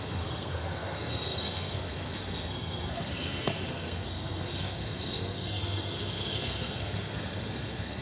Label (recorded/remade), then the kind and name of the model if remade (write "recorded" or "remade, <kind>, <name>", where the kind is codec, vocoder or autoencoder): remade, codec, SNAC